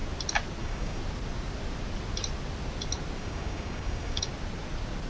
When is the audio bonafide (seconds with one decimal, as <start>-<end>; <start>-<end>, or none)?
0.0-0.6; 1.0-3.2; 4.3-5.1